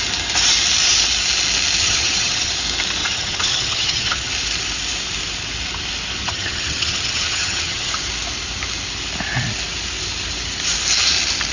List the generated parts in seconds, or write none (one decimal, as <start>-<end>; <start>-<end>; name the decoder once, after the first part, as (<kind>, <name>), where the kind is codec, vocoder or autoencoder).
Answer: 1.8-2.5 (vocoder, HiFi-GAN); 3.0-4.3; 6.2-7.9